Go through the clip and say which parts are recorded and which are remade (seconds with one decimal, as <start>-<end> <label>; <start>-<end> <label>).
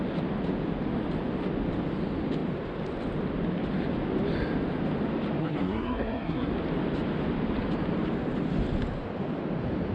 0.0-5.4 recorded; 5.4-6.5 remade; 6.5-9.9 recorded